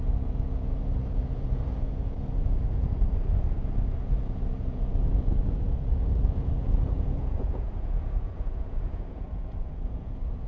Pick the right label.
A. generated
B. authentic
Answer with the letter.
A